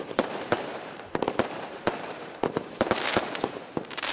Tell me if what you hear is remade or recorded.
remade